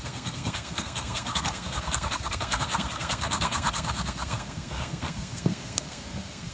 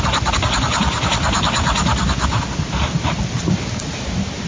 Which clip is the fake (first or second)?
first